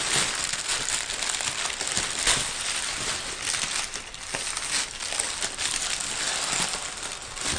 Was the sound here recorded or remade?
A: recorded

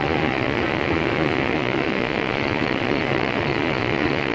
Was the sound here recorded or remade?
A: remade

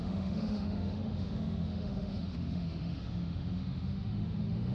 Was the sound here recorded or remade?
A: remade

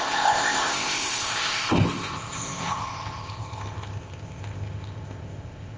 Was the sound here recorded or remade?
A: remade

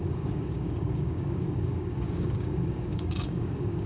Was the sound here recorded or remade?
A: remade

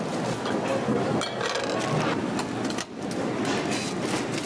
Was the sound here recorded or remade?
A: recorded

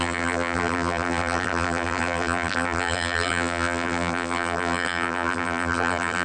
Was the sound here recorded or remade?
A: remade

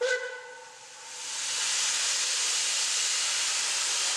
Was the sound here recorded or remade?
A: recorded